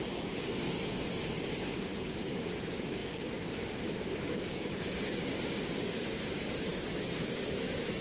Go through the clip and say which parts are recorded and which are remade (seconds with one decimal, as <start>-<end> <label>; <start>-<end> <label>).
0.0-8.0 remade